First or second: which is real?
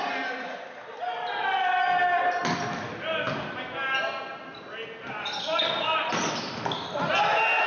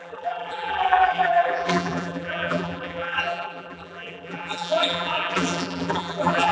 first